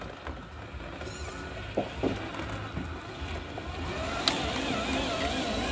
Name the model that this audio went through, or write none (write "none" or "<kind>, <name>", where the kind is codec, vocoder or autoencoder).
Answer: none